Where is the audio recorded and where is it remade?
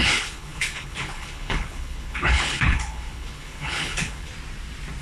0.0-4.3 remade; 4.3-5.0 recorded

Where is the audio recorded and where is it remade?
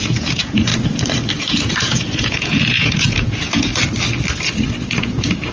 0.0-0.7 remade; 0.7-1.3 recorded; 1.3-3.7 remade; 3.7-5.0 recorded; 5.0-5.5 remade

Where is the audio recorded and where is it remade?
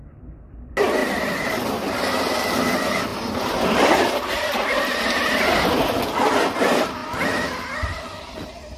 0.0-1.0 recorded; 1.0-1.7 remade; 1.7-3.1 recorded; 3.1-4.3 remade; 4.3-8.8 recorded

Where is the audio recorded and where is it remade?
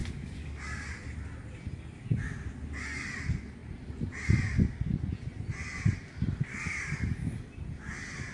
0.0-0.9 remade; 0.9-6.5 recorded; 6.5-7.4 remade; 7.4-8.3 recorded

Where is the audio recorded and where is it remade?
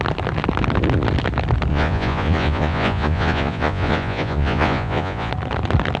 0.0-1.7 recorded; 1.7-5.3 remade; 5.3-6.0 recorded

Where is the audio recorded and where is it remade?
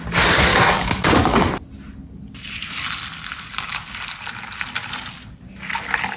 0.0-0.5 recorded; 0.5-1.5 remade; 1.5-6.2 recorded